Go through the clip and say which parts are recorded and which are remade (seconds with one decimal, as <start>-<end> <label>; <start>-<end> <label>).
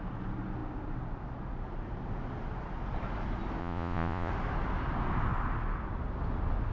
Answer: 0.0-3.6 recorded; 3.6-4.3 remade; 4.3-6.7 recorded